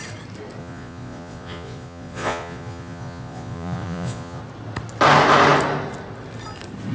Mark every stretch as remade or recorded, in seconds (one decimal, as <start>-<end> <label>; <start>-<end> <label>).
0.0-0.6 recorded; 0.6-4.4 remade; 4.4-6.9 recorded